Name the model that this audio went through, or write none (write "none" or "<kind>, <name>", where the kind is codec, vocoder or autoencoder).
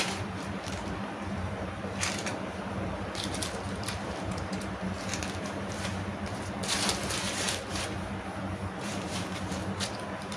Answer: vocoder, BigVGAN v2